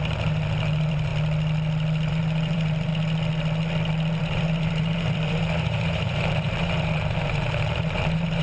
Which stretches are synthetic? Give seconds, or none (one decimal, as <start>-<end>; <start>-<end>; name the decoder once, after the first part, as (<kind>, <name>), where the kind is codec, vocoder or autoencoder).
0.0-1.1 (vocoder, BigVGAN v2); 2.1-2.9; 4.2-8.4